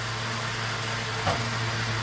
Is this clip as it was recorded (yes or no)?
yes